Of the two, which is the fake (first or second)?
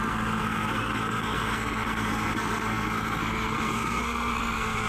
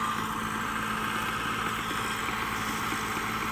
first